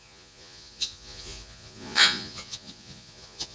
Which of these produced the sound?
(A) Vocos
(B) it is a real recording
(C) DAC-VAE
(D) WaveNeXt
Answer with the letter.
A